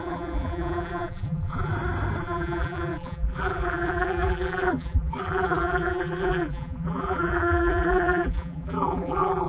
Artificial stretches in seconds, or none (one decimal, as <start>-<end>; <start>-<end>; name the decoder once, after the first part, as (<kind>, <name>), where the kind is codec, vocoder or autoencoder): 0.0-1.7 (vocoder, BigVGAN v2); 2.2-9.5